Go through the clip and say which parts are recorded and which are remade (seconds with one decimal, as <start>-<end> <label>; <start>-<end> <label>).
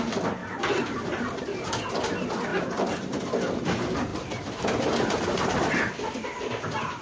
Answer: 0.0-0.4 recorded; 0.4-1.4 remade; 1.4-2.5 recorded; 2.5-3.2 remade; 3.2-7.0 recorded